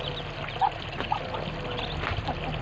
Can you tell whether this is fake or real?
real